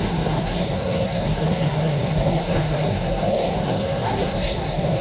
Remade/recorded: remade